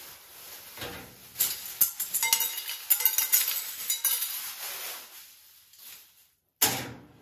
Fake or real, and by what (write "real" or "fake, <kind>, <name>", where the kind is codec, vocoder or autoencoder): real